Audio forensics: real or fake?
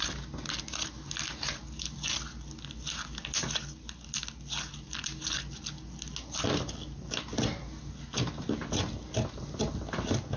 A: real